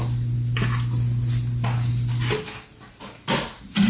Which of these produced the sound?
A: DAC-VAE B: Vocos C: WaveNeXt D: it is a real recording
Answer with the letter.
D